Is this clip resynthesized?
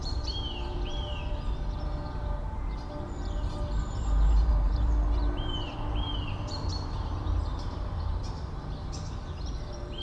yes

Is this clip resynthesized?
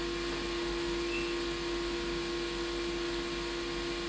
no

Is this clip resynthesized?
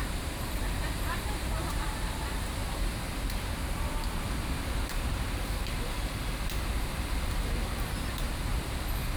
yes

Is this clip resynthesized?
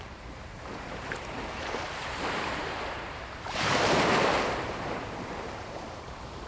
yes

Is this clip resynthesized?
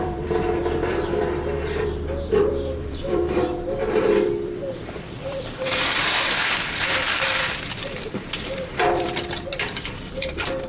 yes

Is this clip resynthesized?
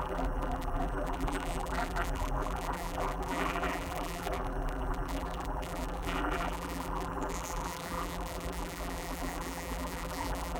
yes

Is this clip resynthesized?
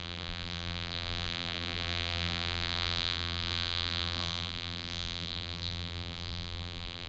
yes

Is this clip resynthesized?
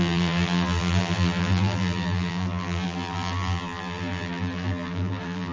yes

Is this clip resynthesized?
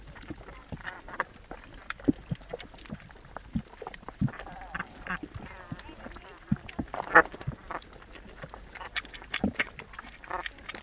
yes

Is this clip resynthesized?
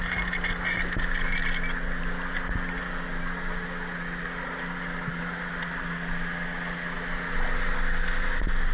no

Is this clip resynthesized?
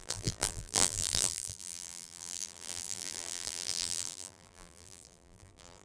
yes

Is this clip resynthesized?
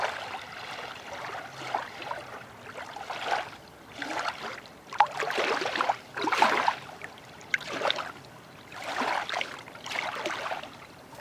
yes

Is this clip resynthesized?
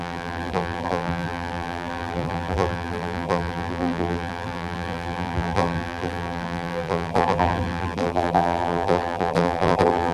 yes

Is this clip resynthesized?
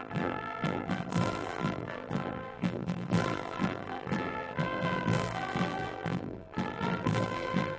yes